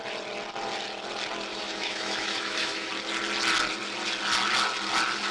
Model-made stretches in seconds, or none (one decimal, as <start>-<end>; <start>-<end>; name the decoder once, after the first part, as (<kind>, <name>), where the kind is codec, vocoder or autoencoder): 1.5-2.9 (autoencoder, DAC-VAE)